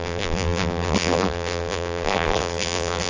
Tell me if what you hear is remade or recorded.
remade